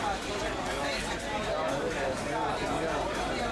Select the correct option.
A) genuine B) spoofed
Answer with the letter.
A